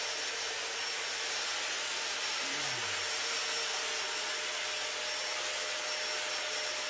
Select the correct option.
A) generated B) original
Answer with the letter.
B